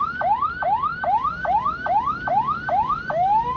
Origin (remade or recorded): recorded